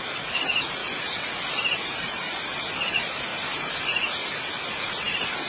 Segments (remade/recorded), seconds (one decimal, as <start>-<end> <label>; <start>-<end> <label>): 0.0-3.3 remade; 3.3-4.7 recorded; 4.7-5.5 remade